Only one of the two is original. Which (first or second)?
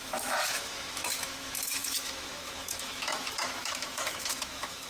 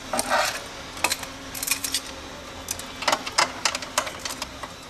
second